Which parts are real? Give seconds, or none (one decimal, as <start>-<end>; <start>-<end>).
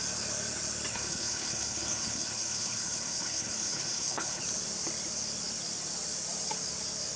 0.0-0.9; 4.4-7.2